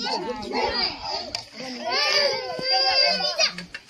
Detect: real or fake real